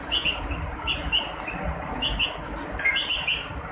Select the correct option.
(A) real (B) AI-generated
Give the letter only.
A